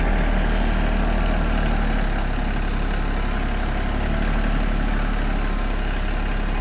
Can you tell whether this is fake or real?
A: real